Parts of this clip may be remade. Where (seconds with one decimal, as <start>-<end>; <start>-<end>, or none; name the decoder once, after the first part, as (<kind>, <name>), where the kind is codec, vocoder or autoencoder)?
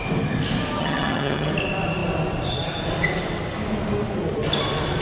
0.8-1.5 (vocoder, HiFi-GAN)